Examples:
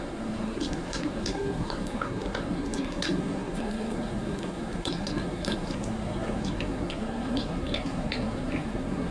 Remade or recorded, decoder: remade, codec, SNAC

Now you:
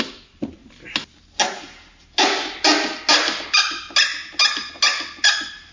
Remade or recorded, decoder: recorded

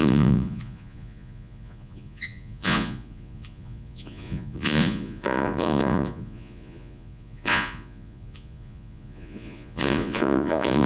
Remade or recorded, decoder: remade, vocoder, Vocos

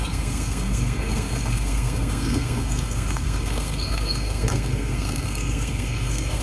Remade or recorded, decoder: remade, codec, SNAC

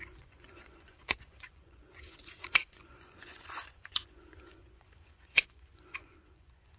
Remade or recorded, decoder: remade, vocoder, Vocos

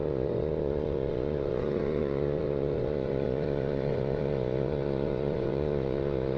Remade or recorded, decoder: remade, vocoder, Vocos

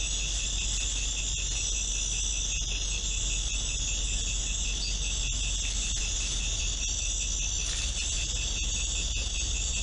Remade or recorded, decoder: recorded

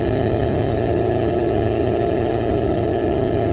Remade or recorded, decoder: remade, vocoder, HiFi-GAN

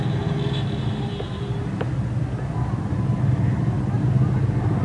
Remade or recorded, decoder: recorded